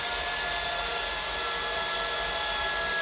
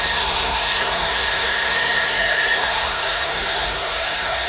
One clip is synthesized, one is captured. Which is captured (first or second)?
first